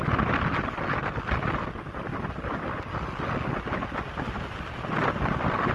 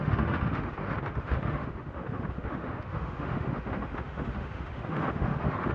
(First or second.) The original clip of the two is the first